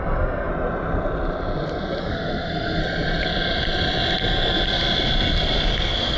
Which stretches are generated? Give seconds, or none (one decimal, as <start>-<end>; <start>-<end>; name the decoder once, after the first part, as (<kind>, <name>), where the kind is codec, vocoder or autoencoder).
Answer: 0.0-0.5 (codec, SNAC); 2.0-2.8; 5.8-6.2